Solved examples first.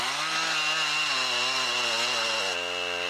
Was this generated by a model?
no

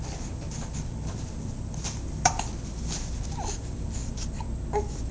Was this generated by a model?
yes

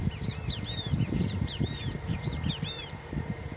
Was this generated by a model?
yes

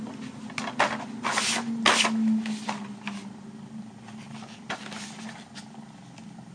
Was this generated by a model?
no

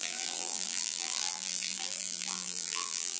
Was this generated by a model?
yes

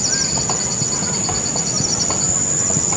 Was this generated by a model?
no